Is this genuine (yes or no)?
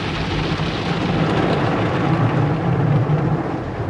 yes